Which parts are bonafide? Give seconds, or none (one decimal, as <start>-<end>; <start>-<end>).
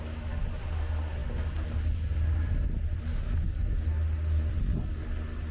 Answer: 0.0-5.5